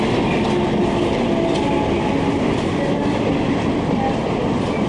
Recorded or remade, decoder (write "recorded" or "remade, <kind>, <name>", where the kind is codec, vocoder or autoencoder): recorded